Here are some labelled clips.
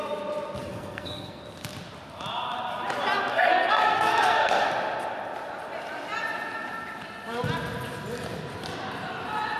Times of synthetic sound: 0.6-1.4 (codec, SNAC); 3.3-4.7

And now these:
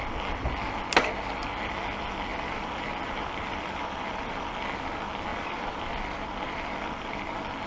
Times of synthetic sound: 2.3-4.4 (vocoder, BigVGAN v2); 5.3-7.2

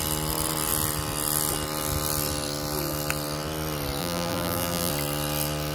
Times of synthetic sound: 4.0-4.9 (vocoder, BigVGAN v2)

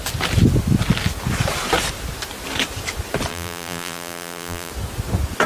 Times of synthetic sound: 3.3-4.7 (vocoder, BigVGAN v2)

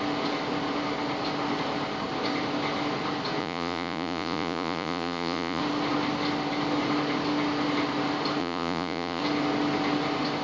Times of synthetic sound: 3.4-5.6 (vocoder, Vocos); 8.4-9.2